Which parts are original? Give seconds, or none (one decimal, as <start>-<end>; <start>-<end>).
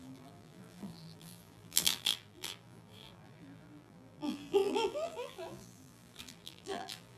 none